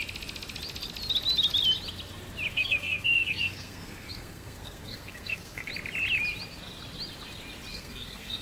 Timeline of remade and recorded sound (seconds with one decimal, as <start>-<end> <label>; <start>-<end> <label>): 0.0-2.5 recorded; 2.5-5.7 remade; 5.7-7.7 recorded; 7.7-8.4 remade